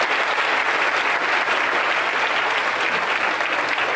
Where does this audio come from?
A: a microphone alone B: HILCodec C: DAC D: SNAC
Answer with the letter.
A